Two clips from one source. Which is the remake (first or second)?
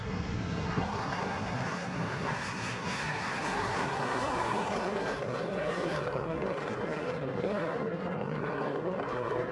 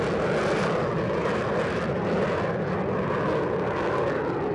first